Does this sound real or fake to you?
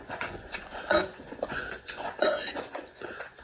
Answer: fake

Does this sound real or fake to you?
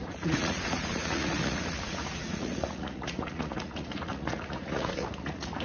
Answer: fake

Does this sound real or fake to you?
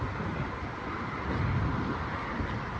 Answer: real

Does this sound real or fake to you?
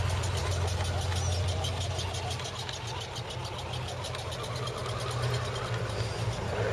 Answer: real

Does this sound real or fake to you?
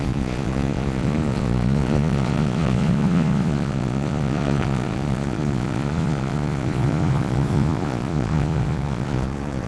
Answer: fake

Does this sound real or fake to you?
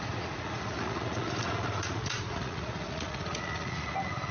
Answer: fake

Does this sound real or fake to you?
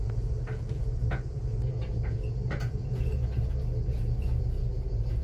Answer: fake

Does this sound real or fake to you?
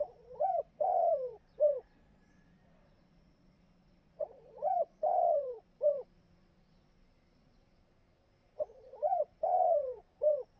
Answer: fake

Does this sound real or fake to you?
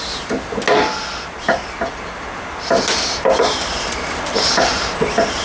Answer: real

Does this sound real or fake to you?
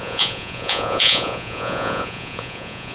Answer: fake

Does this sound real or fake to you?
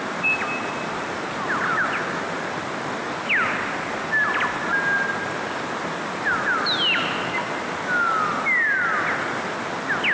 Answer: real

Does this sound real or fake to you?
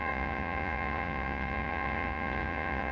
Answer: fake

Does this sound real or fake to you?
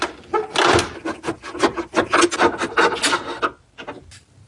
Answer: real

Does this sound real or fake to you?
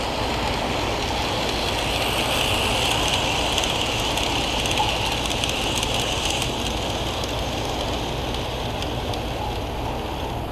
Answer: real